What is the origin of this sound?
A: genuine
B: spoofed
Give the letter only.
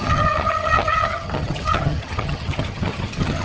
B